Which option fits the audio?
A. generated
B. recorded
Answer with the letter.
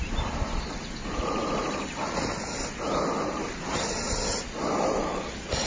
B